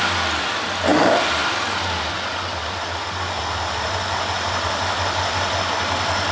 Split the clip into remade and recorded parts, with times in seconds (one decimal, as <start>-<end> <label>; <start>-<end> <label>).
0.0-6.3 recorded